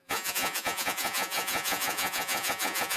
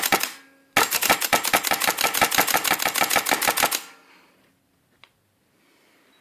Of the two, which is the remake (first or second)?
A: first